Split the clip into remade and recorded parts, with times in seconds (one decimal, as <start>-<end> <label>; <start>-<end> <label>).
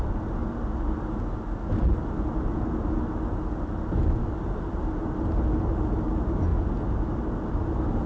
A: 0.0-8.1 recorded